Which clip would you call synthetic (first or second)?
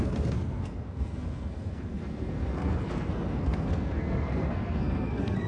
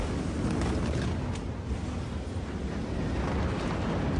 first